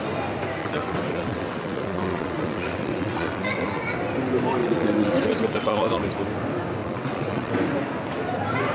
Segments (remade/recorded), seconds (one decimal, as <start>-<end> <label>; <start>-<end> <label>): 0.0-0.6 recorded; 0.6-3.8 remade; 3.8-4.6 recorded; 4.6-6.0 remade; 6.0-6.8 recorded; 6.8-7.5 remade; 7.5-8.7 recorded